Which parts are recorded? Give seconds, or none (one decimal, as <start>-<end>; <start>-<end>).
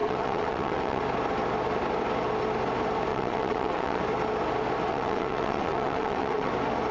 1.0-3.1; 4.0-4.9; 6.5-6.9